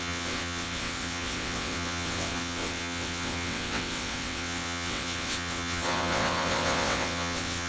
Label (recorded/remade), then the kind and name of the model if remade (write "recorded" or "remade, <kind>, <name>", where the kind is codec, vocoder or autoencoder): remade, vocoder, WaveNeXt